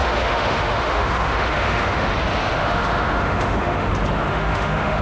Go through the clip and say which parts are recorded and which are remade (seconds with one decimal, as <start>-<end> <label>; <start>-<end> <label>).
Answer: 0.0-2.1 remade; 2.1-2.6 recorded; 2.6-3.9 remade; 3.9-4.3 recorded; 4.3-5.0 remade